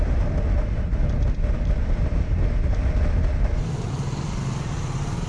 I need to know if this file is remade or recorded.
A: recorded